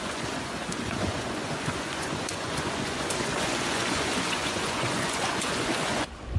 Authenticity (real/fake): fake